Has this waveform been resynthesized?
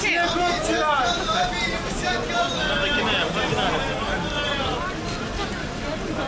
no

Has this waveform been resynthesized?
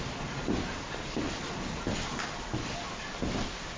no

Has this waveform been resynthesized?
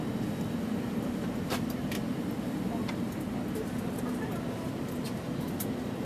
no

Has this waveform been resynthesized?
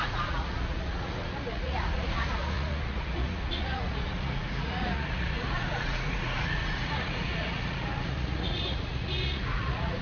yes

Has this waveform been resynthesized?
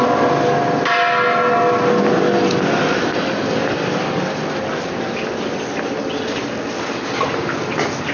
no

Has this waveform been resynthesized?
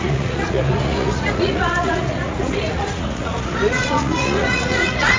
yes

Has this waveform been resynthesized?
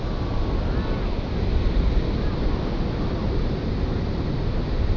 no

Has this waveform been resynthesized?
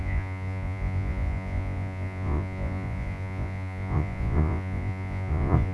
yes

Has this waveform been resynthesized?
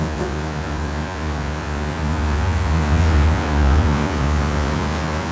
yes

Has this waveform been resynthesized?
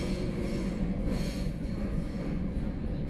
yes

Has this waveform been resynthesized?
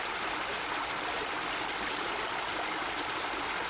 no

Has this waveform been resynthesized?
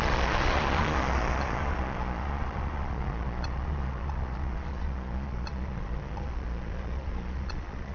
yes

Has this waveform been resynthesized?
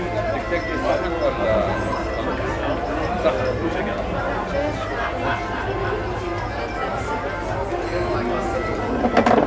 no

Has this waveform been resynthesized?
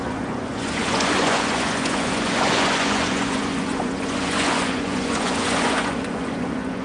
yes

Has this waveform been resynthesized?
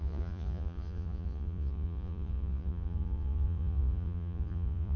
yes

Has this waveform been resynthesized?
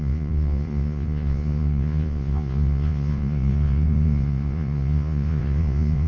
yes